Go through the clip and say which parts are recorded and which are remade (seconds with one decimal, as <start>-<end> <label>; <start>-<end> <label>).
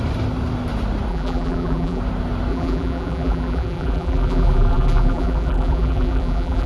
0.0-1.1 recorded; 1.1-2.0 remade; 2.0-2.5 recorded; 2.5-6.7 remade